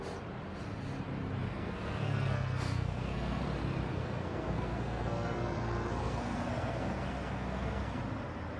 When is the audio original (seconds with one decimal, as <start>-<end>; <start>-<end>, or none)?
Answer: 0.0-1.5; 3.4-3.9; 8.0-8.6